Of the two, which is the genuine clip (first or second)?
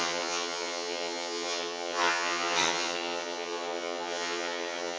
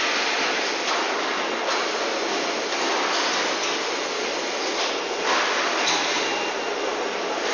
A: second